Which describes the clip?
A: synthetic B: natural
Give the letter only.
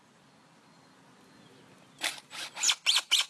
B